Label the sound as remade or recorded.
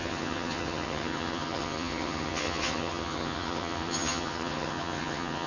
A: remade